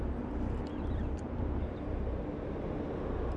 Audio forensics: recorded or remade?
recorded